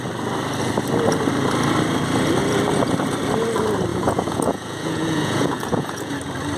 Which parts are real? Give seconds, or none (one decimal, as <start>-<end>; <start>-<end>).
0.0-3.9; 6.1-6.6